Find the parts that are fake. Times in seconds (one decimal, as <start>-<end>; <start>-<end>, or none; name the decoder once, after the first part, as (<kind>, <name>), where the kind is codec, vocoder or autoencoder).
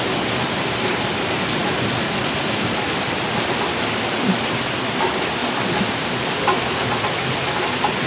none